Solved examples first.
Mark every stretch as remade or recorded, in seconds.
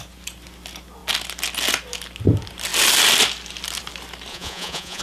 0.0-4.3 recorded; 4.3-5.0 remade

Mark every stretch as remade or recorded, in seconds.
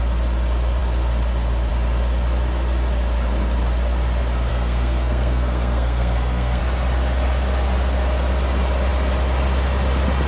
0.0-4.5 recorded; 4.5-6.6 remade; 6.6-10.3 recorded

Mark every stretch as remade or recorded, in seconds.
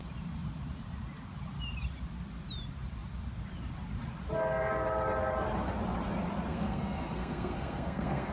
0.0-6.5 recorded; 6.5-8.3 remade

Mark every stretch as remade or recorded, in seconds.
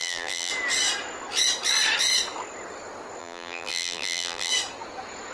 0.0-0.5 remade; 0.5-3.2 recorded; 3.2-4.5 remade; 4.5-5.3 recorded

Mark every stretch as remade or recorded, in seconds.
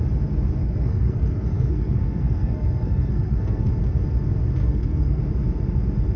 0.0-0.6 recorded; 0.6-3.7 remade; 3.7-4.6 recorded; 4.6-5.2 remade; 5.2-6.2 recorded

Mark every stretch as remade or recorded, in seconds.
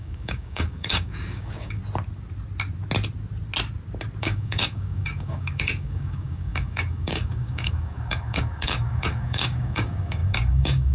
0.0-1.8 remade; 1.8-4.2 recorded; 4.2-10.9 remade